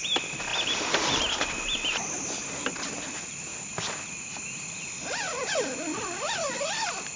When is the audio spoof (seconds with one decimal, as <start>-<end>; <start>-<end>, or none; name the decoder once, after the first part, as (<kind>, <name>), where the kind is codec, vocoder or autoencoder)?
none